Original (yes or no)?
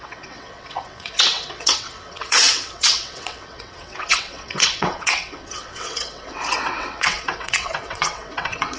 no